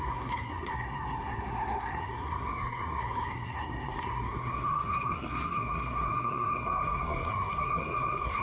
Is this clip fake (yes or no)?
yes